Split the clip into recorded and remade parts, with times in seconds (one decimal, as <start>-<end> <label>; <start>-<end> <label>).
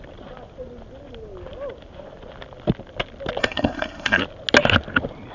0.0-3.4 recorded; 3.4-4.2 remade; 4.2-5.3 recorded